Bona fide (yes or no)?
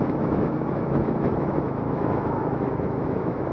no